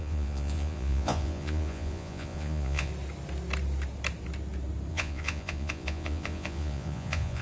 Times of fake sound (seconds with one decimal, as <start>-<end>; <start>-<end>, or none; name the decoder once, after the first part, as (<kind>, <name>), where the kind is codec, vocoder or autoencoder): 0.0-2.9 (vocoder, Vocos); 4.9-7.4